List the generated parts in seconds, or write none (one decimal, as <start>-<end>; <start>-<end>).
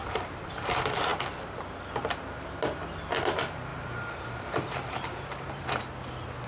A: 0.0-0.5; 3.7-5.8